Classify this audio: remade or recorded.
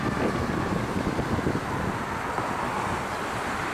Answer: recorded